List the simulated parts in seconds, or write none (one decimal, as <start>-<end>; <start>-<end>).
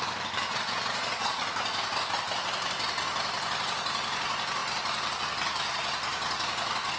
0.5-1.4